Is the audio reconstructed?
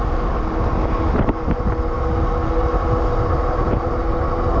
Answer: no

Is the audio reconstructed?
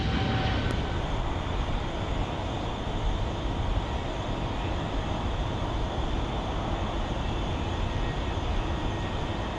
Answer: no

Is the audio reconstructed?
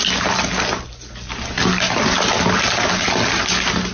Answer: no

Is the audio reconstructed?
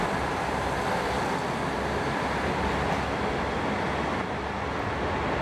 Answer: no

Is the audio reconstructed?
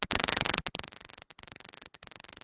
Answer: no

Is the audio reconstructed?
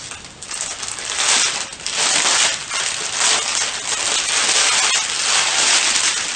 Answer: no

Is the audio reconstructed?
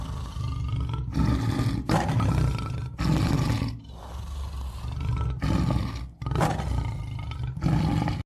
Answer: no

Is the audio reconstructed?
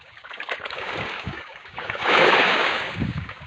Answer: yes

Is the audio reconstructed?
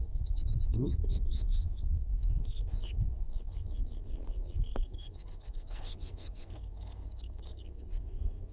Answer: yes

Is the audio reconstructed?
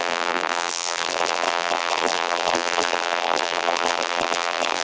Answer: yes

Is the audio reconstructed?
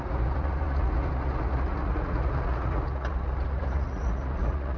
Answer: yes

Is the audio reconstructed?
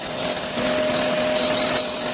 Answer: no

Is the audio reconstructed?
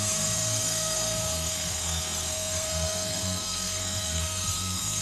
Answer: yes